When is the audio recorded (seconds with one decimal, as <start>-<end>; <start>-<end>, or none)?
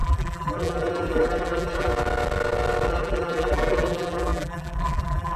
1.9-2.9